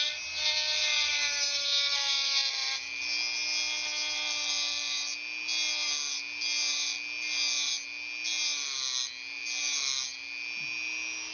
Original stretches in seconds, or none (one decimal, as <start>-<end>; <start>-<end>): 0.0-11.3